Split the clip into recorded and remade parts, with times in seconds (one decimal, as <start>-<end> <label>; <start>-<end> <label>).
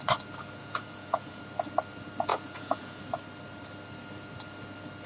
0.0-0.6 recorded; 0.6-1.4 remade; 1.4-2.3 recorded; 2.3-3.0 remade; 3.0-5.1 recorded